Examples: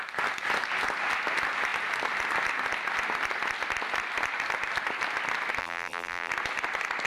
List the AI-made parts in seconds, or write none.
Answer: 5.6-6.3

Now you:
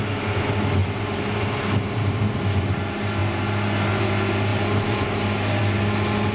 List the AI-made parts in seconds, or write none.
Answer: 0.8-2.2; 4.5-5.6